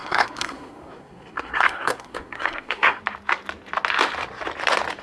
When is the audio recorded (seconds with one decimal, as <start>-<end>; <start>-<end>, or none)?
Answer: 3.0-5.0